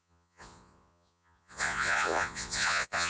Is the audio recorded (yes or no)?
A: no